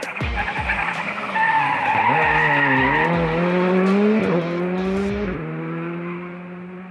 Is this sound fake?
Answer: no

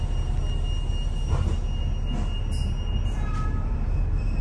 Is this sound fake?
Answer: no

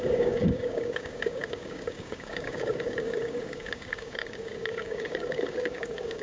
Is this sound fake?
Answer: yes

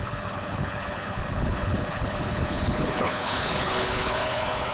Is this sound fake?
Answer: yes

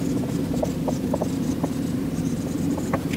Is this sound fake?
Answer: no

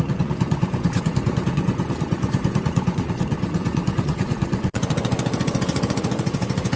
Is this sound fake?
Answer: yes